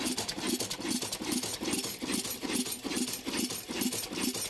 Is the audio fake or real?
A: real